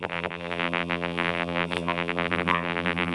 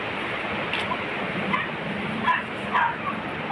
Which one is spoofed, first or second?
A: first